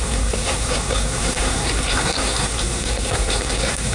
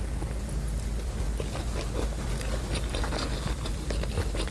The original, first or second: second